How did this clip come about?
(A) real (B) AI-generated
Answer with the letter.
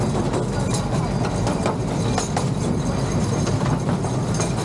A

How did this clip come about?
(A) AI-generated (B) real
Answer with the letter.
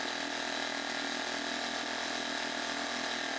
B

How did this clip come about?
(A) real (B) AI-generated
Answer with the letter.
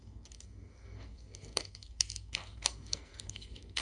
B